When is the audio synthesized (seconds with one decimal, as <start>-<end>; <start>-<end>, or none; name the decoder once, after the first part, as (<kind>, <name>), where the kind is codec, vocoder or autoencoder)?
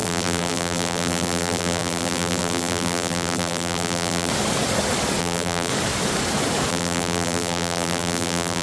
0.0-4.3 (vocoder, BigVGAN v2); 5.2-5.7; 6.7-8.6